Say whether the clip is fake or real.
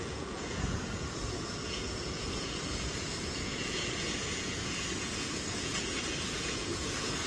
fake